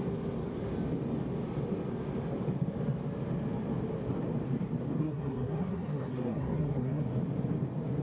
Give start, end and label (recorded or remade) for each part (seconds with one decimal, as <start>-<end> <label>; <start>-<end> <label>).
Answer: 0.0-5.0 recorded; 5.0-7.0 remade; 7.0-8.0 recorded